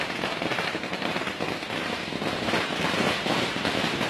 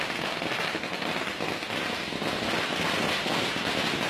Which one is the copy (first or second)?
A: first